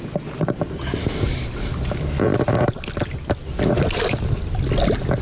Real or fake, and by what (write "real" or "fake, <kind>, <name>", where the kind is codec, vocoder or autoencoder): real